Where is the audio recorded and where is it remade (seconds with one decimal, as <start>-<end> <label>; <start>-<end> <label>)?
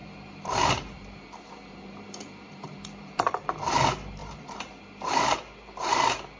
0.0-3.8 remade; 3.8-4.2 recorded; 4.2-4.8 remade; 4.8-6.4 recorded